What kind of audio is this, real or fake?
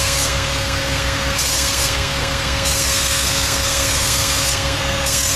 fake